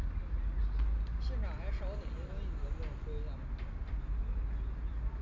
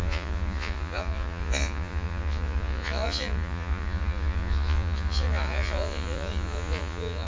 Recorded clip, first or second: first